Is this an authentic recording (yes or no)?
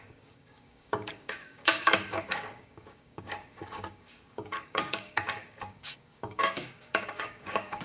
no